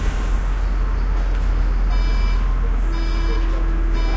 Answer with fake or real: real